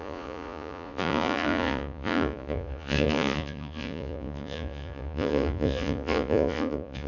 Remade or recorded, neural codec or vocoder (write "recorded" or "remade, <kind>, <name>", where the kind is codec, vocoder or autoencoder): remade, vocoder, Vocos